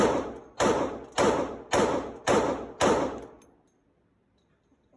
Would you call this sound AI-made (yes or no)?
no